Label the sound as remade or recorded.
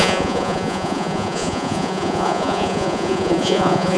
remade